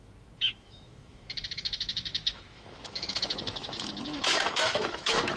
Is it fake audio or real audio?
fake